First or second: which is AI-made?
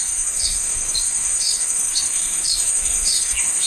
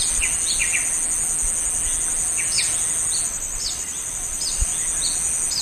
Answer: first